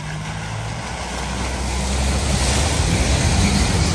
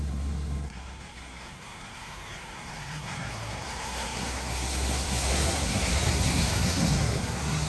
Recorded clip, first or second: first